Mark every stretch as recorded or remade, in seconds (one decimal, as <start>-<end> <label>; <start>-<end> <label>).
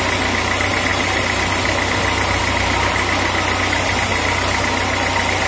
0.0-5.5 recorded